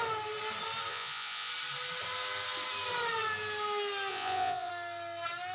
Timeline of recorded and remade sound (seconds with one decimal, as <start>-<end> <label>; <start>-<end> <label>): 0.0-0.9 recorded; 0.9-1.5 remade; 1.5-4.1 recorded; 4.1-4.7 remade; 4.7-5.5 recorded